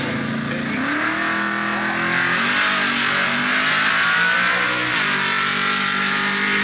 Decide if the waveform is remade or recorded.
recorded